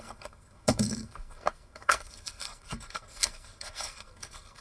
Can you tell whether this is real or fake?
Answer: fake